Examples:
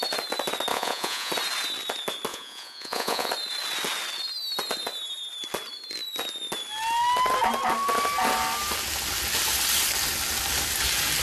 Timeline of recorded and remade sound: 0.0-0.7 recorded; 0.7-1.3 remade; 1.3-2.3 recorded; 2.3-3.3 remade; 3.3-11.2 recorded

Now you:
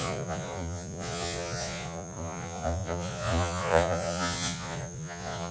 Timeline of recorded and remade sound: 0.0-5.5 remade

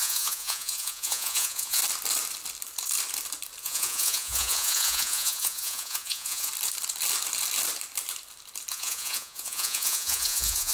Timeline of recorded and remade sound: 0.0-1.8 remade; 1.8-3.6 recorded; 3.6-6.5 remade; 6.5-8.7 recorded; 8.7-10.7 remade

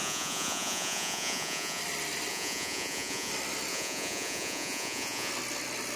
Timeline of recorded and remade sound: 0.0-1.8 remade; 1.8-2.3 recorded; 2.3-3.3 remade; 3.3-3.7 recorded; 3.7-5.3 remade; 5.3-6.0 recorded